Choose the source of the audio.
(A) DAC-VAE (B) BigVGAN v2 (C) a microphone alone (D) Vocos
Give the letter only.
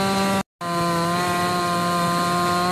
C